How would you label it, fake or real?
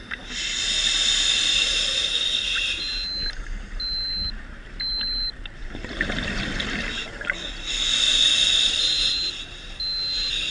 real